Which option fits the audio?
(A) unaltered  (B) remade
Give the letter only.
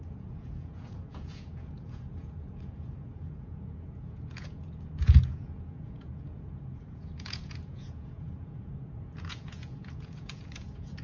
B